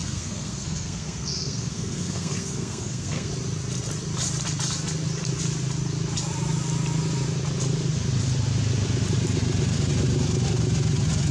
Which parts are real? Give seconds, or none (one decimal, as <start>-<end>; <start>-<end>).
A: 3.3-11.3